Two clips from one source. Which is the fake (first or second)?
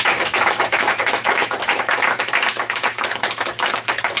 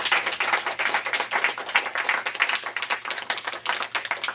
first